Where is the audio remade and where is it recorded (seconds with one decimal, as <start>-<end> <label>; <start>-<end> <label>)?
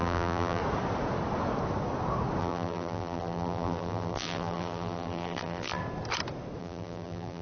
0.0-0.6 remade; 0.6-2.4 recorded; 2.4-5.8 remade; 5.8-6.6 recorded; 6.6-7.4 remade